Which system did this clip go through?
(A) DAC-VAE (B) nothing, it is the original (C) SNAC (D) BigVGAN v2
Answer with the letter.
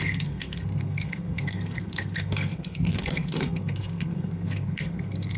C